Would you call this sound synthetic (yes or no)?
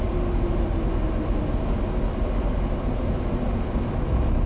no